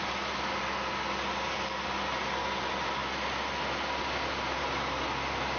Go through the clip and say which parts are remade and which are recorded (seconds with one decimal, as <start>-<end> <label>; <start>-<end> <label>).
0.0-5.6 recorded